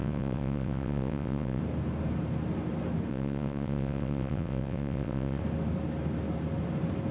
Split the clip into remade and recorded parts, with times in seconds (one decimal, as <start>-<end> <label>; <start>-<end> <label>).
0.0-1.6 remade; 1.6-3.1 recorded; 3.1-5.4 remade; 5.4-7.1 recorded